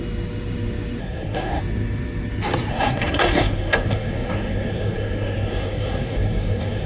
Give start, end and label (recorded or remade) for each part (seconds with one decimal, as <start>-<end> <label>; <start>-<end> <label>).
0.0-1.0 recorded; 1.0-1.6 remade; 1.6-2.7 recorded; 2.7-6.9 remade